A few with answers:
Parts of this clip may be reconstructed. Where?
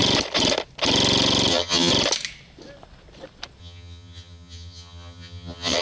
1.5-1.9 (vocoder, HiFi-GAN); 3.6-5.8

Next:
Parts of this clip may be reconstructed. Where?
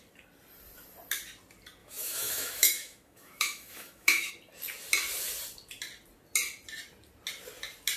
1.8-4.3 (autoencoder, DAC-VAE)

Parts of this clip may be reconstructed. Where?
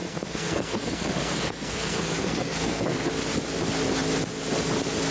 0.0-3.1 (codec, SNAC)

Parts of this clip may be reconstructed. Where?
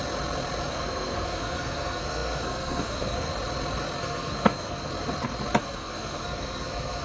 0.7-3.3 (codec, SNAC); 4.0-4.9; 5.6-7.0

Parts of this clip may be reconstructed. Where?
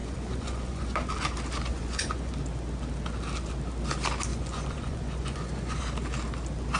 0.0-1.1 (vocoder, Vocos); 1.7-2.3; 4.3-5.8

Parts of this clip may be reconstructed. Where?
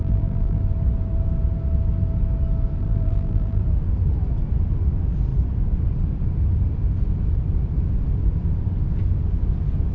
0.0-0.6 (vocoder, BigVGAN v2); 2.8-3.6